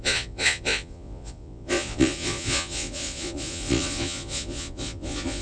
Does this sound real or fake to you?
fake